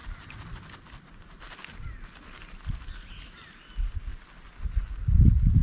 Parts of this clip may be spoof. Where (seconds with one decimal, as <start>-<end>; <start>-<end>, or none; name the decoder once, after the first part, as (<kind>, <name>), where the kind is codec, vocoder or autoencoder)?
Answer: none